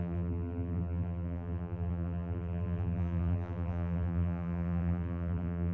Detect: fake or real fake